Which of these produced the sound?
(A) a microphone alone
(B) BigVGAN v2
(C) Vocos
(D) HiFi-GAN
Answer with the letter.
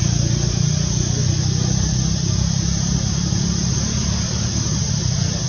A